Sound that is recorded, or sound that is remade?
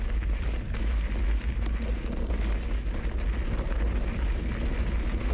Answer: recorded